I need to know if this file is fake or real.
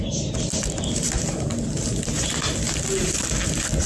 fake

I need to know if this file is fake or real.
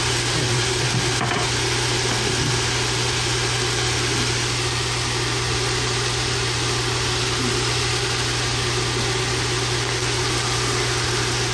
real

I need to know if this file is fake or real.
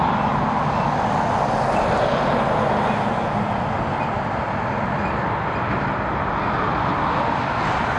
real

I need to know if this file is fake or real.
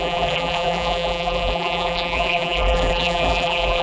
fake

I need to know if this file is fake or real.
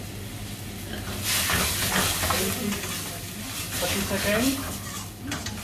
real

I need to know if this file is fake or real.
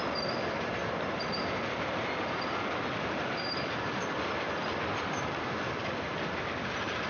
fake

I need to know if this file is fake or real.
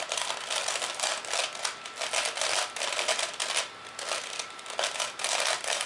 real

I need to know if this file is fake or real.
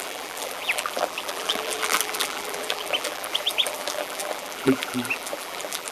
fake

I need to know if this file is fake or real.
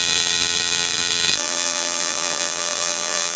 fake